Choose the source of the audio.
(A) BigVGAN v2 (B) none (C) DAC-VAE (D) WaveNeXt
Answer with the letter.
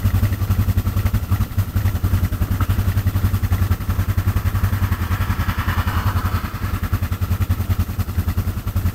B